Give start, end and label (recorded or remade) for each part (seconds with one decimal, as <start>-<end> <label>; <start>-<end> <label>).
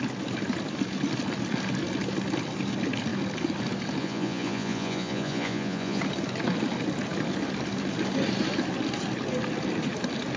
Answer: 0.0-4.0 recorded; 4.0-6.0 remade; 6.0-10.4 recorded